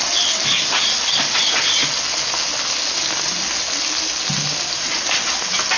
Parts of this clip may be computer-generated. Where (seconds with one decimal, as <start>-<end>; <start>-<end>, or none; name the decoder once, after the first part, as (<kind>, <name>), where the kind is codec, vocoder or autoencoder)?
none